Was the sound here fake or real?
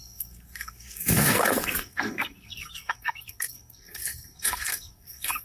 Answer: fake